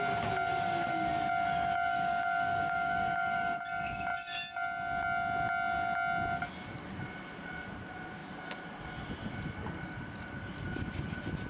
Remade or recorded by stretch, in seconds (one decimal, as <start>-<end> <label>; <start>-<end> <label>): 0.0-0.5 recorded; 0.5-1.1 remade; 1.1-1.9 recorded; 1.9-3.6 remade; 3.6-11.5 recorded